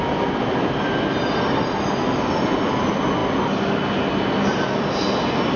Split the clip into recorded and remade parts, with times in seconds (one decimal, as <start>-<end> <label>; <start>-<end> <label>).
0.0-5.6 recorded